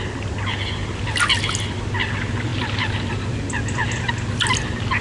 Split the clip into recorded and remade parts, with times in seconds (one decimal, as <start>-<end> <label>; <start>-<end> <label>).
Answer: 0.0-5.0 recorded